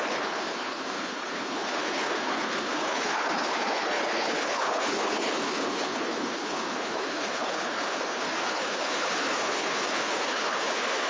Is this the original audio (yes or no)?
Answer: no